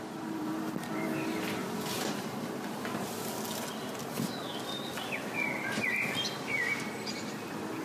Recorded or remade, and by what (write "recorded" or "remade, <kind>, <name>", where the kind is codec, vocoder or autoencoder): remade, vocoder, BigVGAN v2